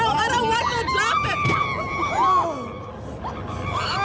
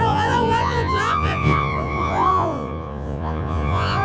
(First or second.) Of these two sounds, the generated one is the second